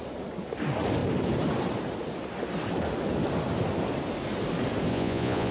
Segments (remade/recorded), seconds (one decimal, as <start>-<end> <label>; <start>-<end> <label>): 0.0-4.9 recorded; 4.9-5.5 remade